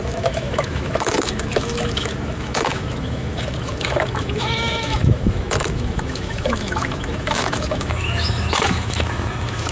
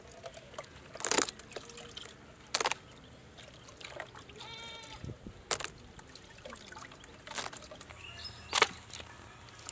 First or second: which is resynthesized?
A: first